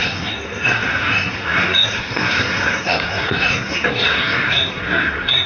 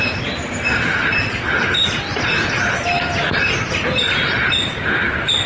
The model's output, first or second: first